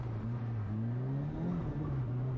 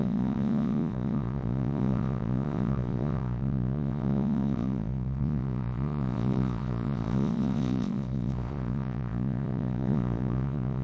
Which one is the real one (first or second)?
first